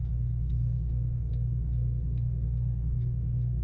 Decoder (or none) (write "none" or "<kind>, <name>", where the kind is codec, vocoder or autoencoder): codec, SNAC